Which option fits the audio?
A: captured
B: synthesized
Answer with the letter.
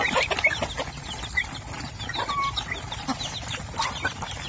A